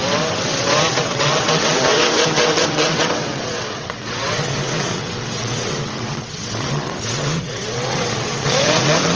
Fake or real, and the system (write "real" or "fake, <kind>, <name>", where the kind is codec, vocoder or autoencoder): fake, vocoder, WaveNeXt